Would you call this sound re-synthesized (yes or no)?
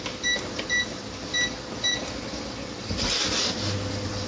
no